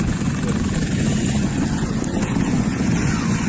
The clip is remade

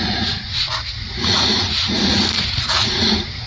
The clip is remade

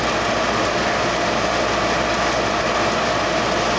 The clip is recorded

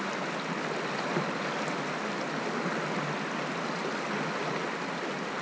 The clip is recorded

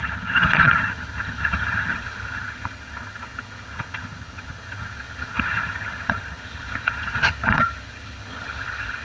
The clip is remade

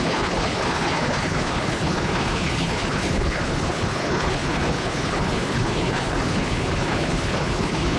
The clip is remade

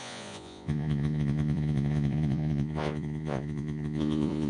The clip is remade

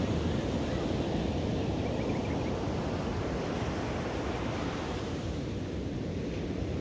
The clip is recorded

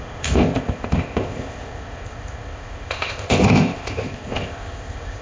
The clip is remade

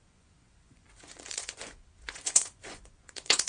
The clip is remade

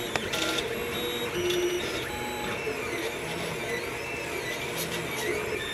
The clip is recorded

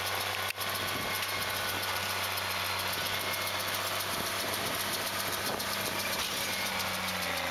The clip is recorded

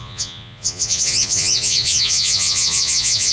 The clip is remade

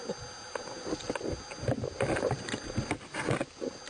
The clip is recorded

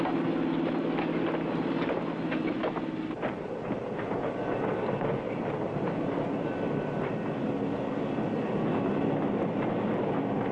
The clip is recorded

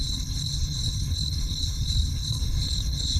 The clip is remade